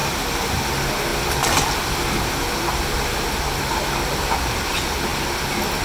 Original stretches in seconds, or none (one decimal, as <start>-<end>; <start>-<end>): 0.7-1.1; 4.6-5.8